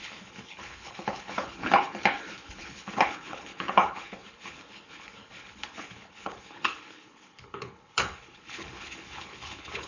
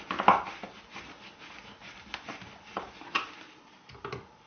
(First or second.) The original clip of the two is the second